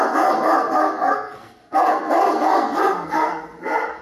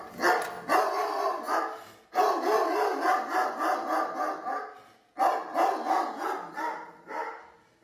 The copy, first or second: first